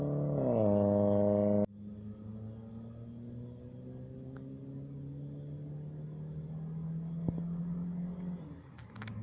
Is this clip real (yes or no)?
yes